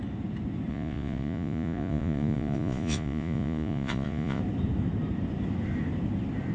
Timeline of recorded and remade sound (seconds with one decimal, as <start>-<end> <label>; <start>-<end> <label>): 0.0-0.7 recorded; 0.7-4.4 remade; 4.4-6.5 recorded